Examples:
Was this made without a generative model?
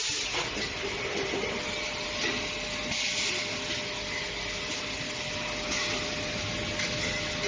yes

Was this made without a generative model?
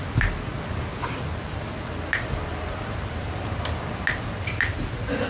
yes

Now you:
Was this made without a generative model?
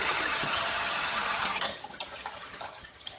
no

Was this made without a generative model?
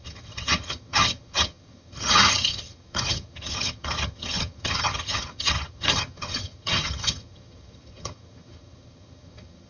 no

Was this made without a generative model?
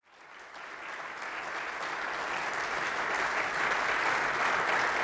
yes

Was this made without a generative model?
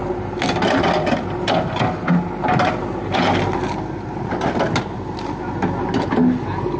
yes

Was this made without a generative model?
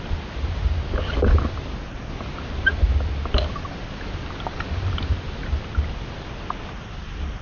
yes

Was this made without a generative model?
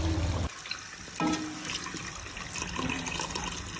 yes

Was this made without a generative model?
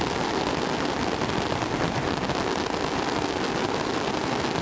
yes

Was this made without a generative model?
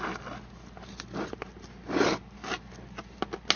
yes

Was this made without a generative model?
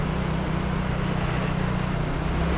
yes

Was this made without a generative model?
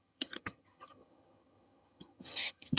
no